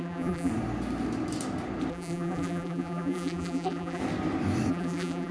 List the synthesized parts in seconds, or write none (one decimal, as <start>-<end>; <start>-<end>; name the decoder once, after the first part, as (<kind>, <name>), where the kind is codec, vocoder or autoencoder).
0.0-0.5 (vocoder, BigVGAN v2); 1.9-4.0; 4.7-5.3